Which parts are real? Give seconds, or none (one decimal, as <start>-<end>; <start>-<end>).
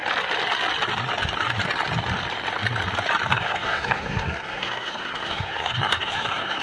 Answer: 0.0-3.3